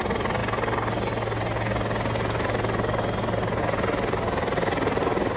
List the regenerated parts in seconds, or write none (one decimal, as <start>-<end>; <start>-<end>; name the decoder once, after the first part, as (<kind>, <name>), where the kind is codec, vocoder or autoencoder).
none